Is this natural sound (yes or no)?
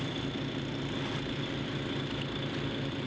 yes